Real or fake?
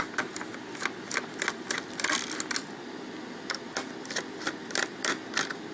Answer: real